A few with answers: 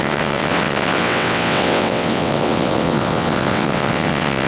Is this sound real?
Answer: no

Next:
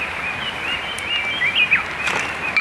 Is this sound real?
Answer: yes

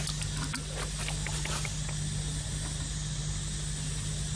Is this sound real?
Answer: yes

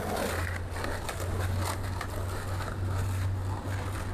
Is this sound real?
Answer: yes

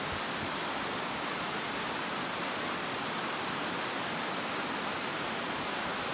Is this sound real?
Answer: yes